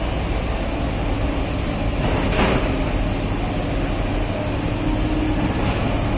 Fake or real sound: real